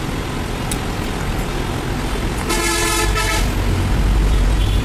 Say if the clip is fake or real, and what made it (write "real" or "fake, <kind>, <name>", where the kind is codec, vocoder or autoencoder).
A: real